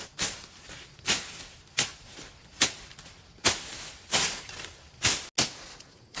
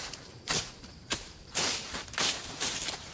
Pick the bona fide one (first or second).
first